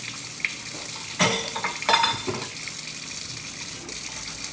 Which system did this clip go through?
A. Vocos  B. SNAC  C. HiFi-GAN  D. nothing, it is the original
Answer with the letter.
D